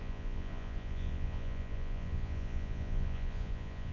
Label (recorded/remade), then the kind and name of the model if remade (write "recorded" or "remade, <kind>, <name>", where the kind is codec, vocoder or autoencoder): remade, vocoder, Vocos